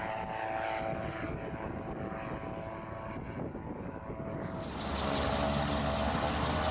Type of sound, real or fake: real